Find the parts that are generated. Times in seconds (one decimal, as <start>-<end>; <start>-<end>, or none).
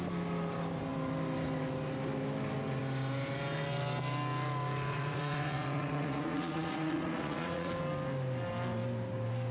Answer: 4.9-7.7